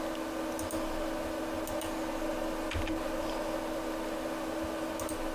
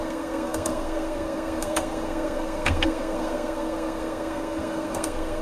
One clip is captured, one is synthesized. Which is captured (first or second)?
first